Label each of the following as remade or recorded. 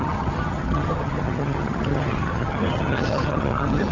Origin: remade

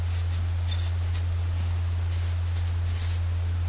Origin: recorded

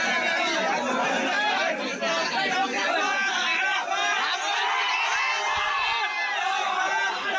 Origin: recorded